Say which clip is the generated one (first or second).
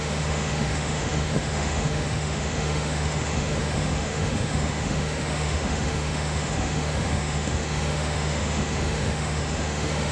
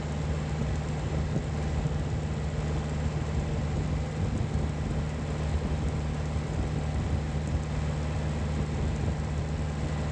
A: first